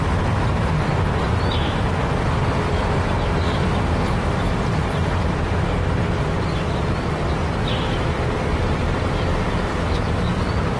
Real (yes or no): no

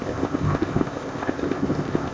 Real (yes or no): no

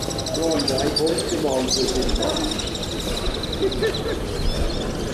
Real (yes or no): yes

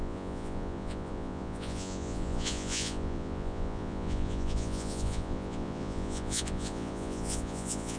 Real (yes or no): no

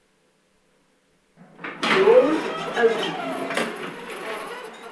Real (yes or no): yes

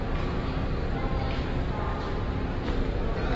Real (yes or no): yes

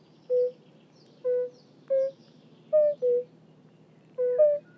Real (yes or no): no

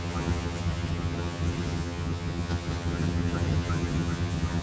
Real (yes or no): no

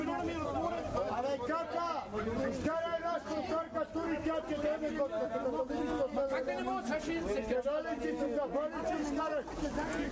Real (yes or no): yes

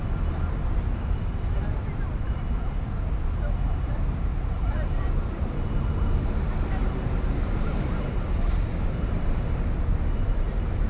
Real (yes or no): yes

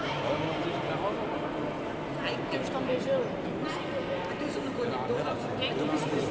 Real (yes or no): yes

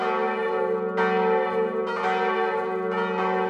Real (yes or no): yes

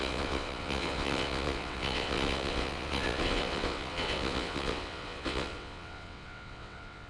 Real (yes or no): no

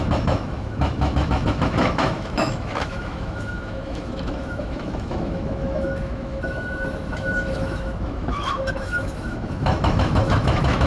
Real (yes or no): no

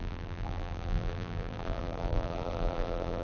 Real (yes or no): no